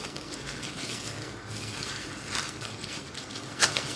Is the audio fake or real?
fake